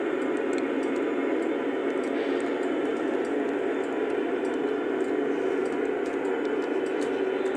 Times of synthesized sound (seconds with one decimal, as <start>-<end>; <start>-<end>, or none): 2.9-3.6